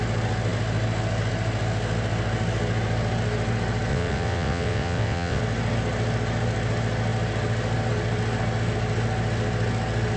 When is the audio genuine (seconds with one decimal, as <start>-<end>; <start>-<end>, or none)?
0.0-3.9; 5.4-10.2